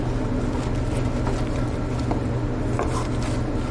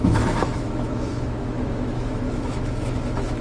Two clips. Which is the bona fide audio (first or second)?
first